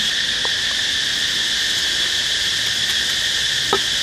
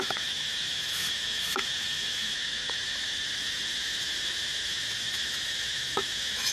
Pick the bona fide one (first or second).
first